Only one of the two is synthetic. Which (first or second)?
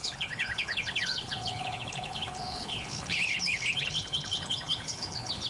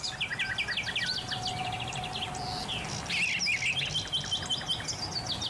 first